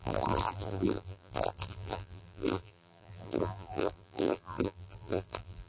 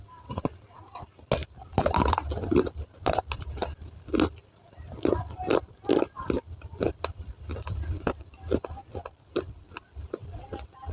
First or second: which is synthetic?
first